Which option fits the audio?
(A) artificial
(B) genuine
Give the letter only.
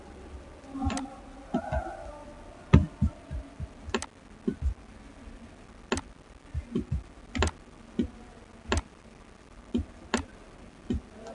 B